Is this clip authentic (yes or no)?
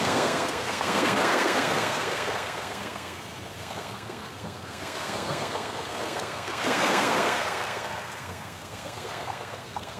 no